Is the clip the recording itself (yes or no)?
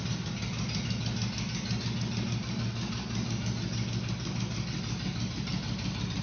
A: yes